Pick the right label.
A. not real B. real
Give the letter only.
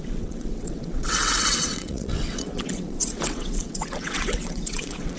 A